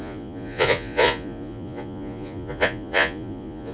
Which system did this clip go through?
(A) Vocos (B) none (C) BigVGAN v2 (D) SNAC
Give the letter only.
A